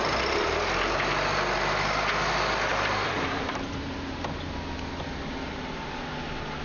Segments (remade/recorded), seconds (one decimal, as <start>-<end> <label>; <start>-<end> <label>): 0.0-2.7 recorded; 2.7-4.2 remade; 4.2-6.6 recorded